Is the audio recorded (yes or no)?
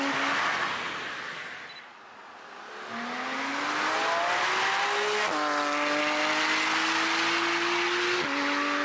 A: yes